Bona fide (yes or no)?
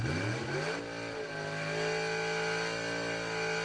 yes